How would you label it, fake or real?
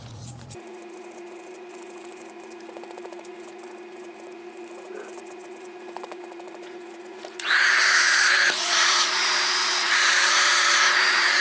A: fake